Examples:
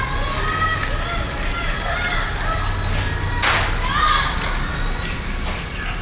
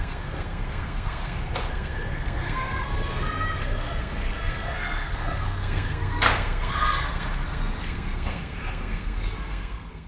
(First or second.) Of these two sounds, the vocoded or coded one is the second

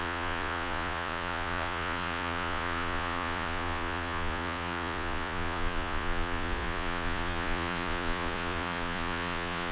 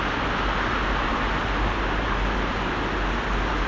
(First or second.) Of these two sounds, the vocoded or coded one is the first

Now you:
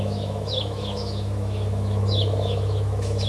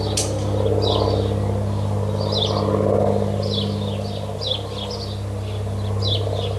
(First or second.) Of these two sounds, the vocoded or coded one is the first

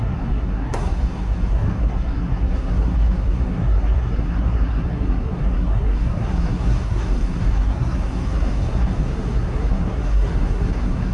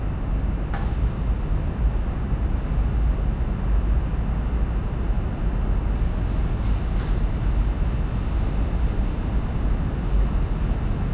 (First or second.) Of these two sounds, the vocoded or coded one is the first